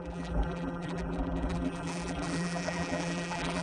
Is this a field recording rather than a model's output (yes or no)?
no